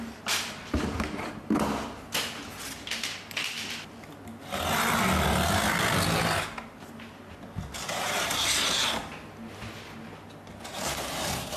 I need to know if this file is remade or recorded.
recorded